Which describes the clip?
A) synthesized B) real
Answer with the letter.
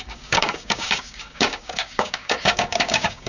A